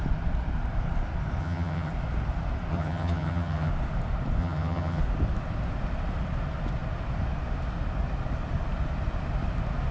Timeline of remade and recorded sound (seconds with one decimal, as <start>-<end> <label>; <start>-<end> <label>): 0.0-1.4 recorded; 1.4-1.9 remade; 1.9-2.7 recorded; 2.7-3.7 remade; 3.7-4.4 recorded; 4.4-5.0 remade; 5.0-9.9 recorded